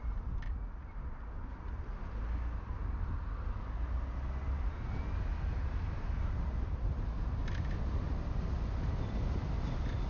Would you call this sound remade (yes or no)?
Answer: no